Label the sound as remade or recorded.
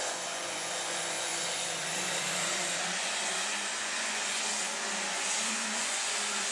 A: remade